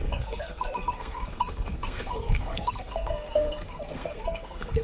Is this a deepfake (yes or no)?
yes